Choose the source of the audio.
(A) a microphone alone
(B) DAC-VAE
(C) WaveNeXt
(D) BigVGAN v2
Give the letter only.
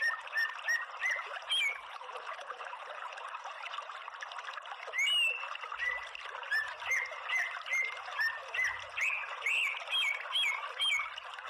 A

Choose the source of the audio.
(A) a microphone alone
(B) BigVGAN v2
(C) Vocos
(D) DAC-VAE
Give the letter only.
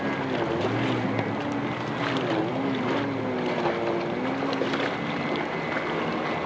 A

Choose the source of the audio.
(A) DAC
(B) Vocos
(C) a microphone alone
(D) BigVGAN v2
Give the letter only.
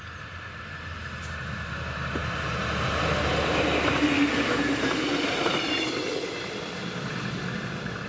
C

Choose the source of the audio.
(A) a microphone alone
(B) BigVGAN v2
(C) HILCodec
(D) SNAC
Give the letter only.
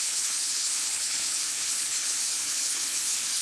C